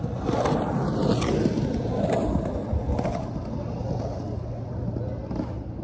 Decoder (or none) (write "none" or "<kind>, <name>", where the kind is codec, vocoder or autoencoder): none